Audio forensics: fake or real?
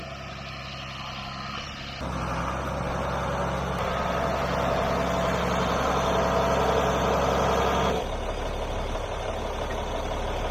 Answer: real